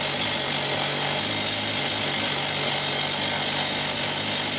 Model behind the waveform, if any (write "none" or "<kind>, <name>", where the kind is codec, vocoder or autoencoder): none